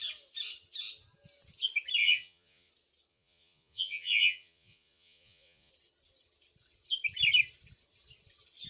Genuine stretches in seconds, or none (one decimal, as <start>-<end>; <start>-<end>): 0.0-2.0; 2.7-3.1; 5.7-8.7

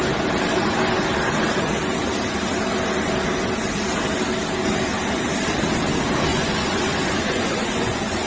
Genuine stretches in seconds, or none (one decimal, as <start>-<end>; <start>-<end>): 0.0-6.3